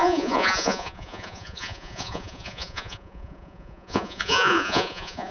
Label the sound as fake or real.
fake